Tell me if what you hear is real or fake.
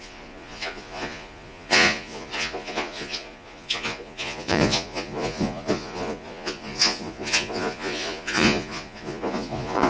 fake